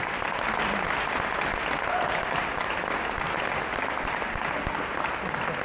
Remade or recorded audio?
recorded